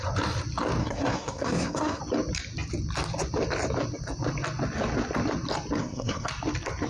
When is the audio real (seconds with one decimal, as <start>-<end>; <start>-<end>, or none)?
0.0-0.8; 2.0-5.8; 6.3-6.9